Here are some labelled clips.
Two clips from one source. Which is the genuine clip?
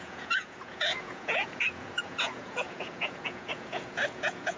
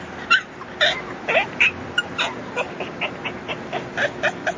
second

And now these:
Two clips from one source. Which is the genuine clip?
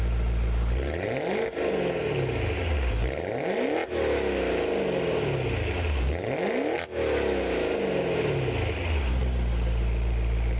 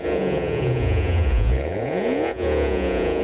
first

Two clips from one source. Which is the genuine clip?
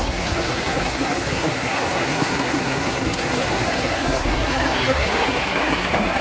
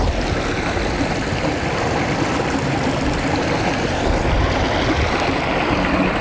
second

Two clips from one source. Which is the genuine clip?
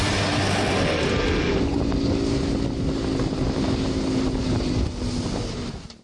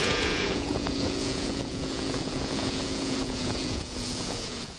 first